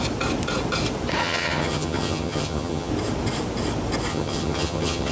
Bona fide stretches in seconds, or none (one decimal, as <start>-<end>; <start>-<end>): 0.0-1.2; 2.9-4.1